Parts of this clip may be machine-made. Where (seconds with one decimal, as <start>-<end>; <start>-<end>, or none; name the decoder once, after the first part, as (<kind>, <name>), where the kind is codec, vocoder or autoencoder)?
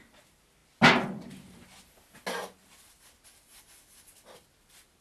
none